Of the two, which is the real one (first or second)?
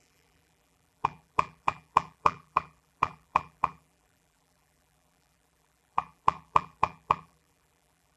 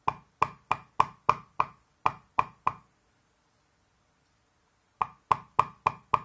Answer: second